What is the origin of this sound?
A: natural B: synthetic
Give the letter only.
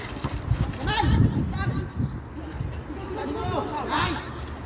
A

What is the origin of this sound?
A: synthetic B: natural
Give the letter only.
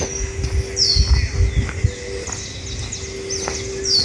B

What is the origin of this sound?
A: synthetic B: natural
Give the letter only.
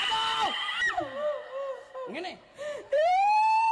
A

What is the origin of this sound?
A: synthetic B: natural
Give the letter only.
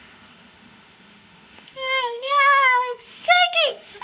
A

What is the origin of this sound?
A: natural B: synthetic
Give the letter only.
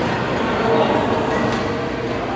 A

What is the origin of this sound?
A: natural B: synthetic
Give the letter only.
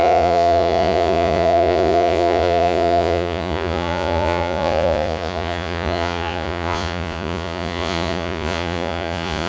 B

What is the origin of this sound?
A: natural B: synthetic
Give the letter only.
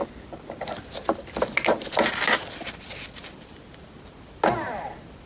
A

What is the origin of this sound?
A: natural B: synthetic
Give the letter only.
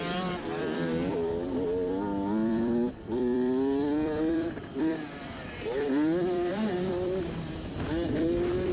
B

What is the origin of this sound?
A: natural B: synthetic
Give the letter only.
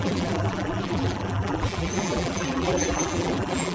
B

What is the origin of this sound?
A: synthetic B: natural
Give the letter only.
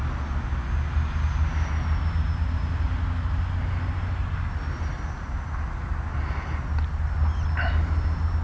B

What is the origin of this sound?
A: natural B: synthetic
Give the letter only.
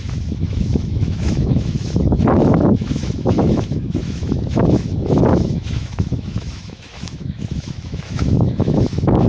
B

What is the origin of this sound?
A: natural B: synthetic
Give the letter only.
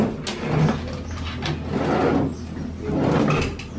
A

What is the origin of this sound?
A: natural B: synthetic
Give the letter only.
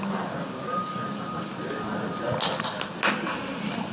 A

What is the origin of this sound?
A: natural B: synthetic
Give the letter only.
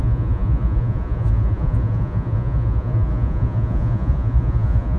B